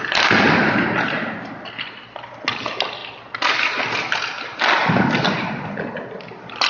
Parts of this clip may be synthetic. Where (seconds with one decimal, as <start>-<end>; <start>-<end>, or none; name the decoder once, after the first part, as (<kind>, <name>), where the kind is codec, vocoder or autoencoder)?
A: none